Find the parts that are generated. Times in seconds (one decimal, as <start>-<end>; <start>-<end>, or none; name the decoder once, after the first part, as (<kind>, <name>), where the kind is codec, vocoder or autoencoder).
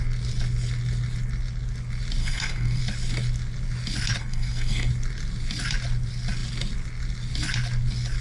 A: 2.2-2.8 (codec, SNAC); 4.2-4.9